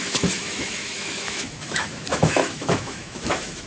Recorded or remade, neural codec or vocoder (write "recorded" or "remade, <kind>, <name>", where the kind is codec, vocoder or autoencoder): remade, autoencoder, DAC-VAE